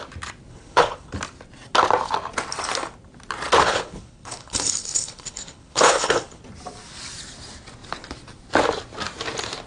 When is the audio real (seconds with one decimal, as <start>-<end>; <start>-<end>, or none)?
0.0-0.5; 1.1-3.6; 6.4-9.7